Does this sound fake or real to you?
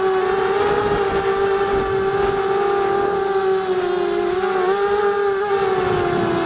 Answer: real